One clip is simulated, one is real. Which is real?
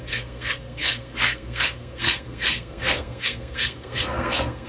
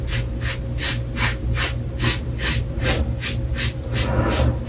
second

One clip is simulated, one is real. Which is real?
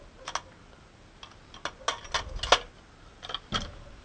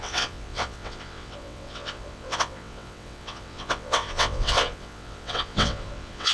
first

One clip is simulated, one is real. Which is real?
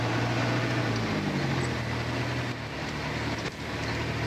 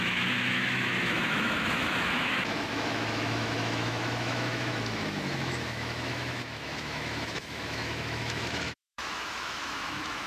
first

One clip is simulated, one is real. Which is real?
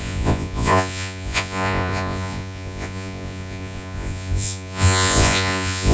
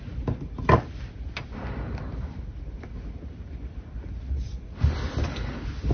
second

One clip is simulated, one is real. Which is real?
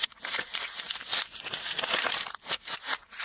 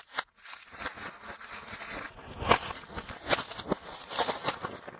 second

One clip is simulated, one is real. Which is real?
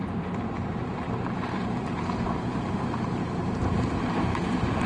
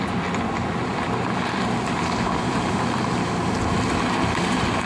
second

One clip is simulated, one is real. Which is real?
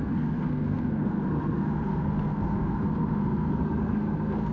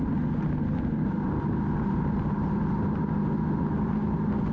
second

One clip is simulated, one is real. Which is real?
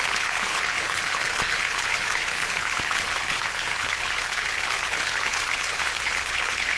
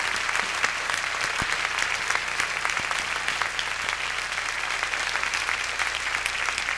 second